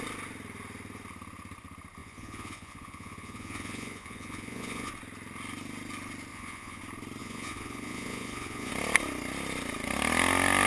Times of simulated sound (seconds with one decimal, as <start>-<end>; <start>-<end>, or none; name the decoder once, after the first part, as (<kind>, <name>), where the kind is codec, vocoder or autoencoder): 2.0-4.9 (vocoder, Vocos); 6.3-6.8; 7.2-8.7